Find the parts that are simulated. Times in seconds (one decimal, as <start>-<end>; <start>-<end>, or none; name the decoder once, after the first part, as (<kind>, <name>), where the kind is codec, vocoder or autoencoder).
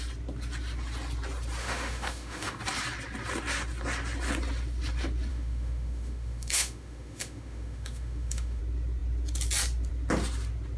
1.6-2.6 (autoencoder, DAC-VAE); 5.3-8.6